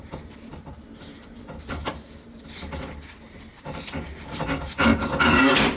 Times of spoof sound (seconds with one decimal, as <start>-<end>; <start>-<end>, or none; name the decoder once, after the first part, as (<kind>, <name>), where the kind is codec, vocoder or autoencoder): 0.0-5.8 (vocoder, BigVGAN v2)